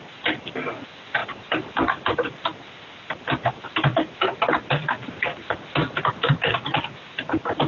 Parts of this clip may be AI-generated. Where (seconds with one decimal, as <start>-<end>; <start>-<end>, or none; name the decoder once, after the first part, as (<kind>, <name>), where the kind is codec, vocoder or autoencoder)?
1.2-2.3 (vocoder, BigVGAN v2)

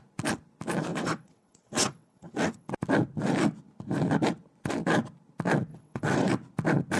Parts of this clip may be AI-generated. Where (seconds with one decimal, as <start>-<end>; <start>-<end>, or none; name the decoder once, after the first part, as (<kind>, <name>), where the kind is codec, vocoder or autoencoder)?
0.9-2.7 (vocoder, WaveNeXt); 5.7-6.3

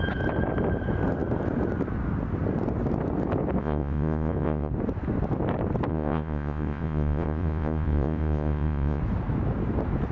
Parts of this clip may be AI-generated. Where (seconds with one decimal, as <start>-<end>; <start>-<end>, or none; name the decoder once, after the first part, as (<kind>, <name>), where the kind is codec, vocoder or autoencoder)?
3.6-4.7 (vocoder, Vocos); 5.9-9.0

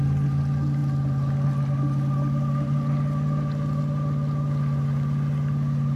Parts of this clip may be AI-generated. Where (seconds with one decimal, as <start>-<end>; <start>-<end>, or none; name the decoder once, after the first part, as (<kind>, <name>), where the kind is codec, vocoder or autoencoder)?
none

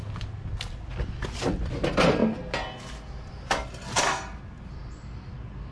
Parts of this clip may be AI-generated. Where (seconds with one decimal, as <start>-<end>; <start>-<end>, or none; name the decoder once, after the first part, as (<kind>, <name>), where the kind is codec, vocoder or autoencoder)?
none

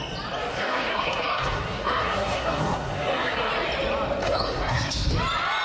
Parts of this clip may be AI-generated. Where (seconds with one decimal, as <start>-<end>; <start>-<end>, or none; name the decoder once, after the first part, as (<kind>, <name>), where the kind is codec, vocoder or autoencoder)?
0.5-3.5 (codec, SNAC); 4.2-5.1

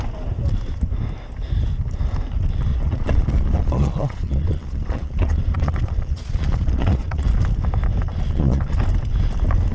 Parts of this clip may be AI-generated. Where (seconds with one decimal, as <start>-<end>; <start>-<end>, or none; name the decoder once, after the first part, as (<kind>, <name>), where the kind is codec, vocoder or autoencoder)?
2.7-7.4 (vocoder, Vocos); 8.1-8.8